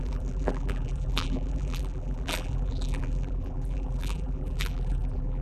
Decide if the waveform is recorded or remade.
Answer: remade